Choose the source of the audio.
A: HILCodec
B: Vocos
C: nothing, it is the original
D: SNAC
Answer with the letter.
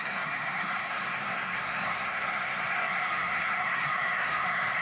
D